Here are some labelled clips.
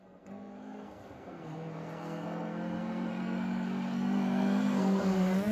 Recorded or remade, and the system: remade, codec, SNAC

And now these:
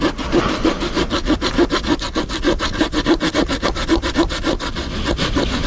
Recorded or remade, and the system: recorded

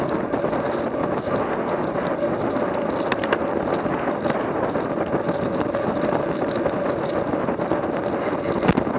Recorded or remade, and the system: recorded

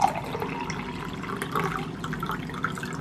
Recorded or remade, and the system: recorded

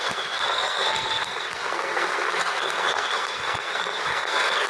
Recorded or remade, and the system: remade, codec, SNAC